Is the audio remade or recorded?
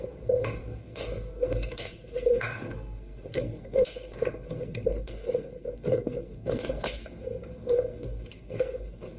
remade